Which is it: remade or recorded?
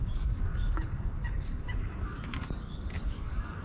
remade